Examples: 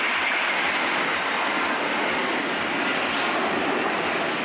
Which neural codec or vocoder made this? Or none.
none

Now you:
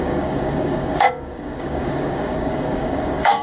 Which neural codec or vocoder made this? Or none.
codec, DAC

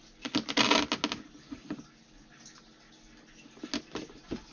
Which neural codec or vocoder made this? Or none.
none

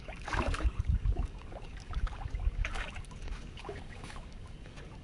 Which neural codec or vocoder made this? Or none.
codec, DAC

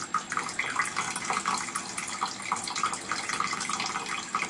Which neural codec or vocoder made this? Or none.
none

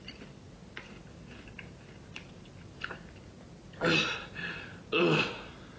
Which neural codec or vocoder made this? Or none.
none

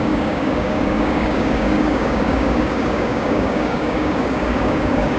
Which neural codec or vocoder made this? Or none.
codec, DAC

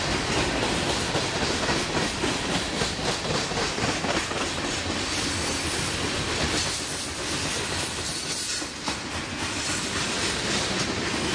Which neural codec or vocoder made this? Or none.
none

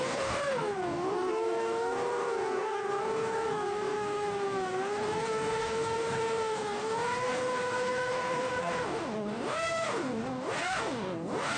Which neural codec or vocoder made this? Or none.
codec, DAC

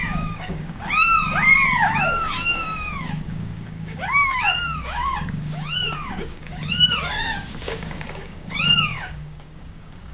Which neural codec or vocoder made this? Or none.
codec, DAC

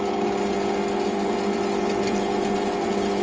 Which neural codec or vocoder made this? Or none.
none